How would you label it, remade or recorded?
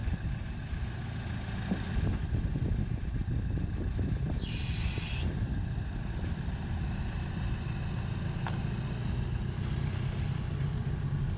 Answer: recorded